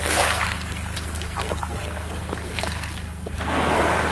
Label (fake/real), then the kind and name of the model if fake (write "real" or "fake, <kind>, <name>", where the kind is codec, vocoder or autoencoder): fake, codec, SNAC